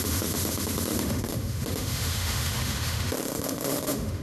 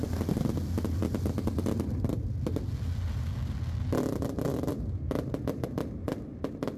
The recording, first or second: second